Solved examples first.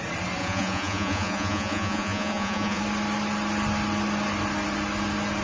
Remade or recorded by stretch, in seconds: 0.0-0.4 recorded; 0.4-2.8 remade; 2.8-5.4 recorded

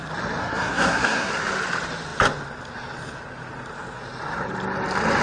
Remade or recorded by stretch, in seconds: 0.0-0.4 recorded; 0.4-1.3 remade; 1.3-5.2 recorded

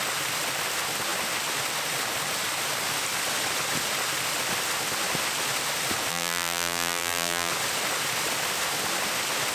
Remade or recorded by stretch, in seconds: 0.0-6.1 recorded; 6.1-7.5 remade; 7.5-9.5 recorded

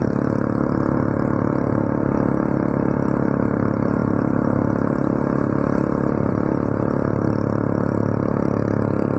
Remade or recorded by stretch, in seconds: 0.0-9.2 recorded

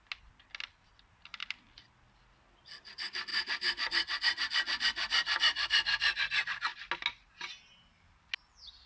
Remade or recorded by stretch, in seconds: 0.0-8.9 recorded